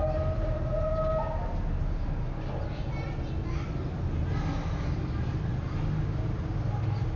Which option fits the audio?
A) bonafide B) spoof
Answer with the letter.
A